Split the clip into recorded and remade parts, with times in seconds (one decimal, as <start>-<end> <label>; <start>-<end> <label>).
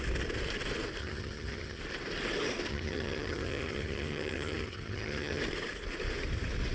0.0-1.0 recorded; 1.0-1.8 remade; 1.8-2.7 recorded; 2.7-5.4 remade; 5.4-6.7 recorded